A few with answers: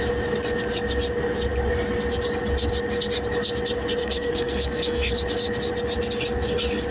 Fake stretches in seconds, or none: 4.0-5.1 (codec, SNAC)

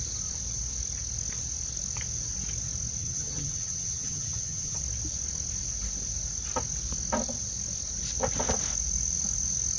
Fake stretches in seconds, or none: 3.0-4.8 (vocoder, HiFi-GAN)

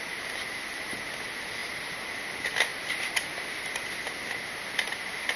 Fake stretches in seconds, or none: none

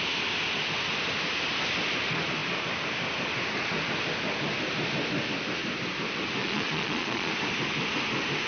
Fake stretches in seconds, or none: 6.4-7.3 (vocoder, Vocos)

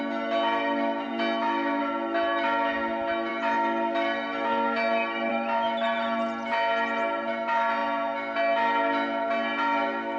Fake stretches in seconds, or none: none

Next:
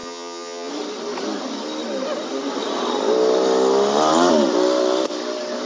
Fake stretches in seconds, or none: 0.0-0.7 (vocoder, HiFi-GAN)

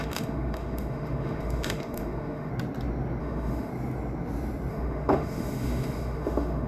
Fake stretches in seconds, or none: 0.0-2.5 (autoencoder, DAC-VAE); 3.2-3.7; 4.7-6.7